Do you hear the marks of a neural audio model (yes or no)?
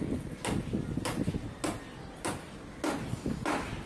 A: no